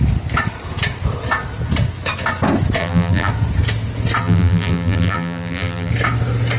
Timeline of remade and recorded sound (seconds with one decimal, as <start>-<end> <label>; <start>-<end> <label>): 0.0-2.8 recorded; 2.8-3.3 remade; 3.3-4.2 recorded; 4.2-5.9 remade; 5.9-6.6 recorded